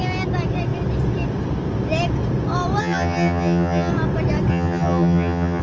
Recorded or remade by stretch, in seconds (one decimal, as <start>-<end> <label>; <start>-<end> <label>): 0.0-2.8 recorded; 2.8-3.9 remade; 3.9-4.5 recorded; 4.5-5.6 remade